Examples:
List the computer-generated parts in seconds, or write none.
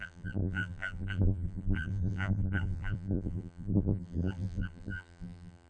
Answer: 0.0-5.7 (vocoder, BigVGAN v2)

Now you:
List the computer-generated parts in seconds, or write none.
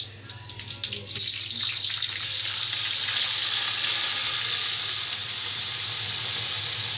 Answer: none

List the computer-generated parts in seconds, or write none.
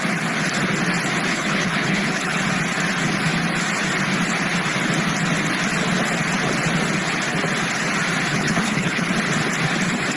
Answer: 1.3-2.4 (codec, HILCodec); 8.3-9.1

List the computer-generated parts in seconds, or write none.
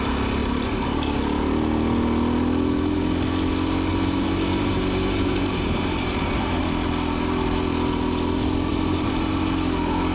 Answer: 0.4-1.2 (vocoder, BigVGAN v2); 3.9-6.6; 8.7-9.4